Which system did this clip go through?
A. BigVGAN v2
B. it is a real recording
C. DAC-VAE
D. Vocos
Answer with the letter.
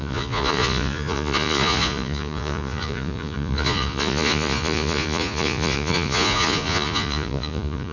D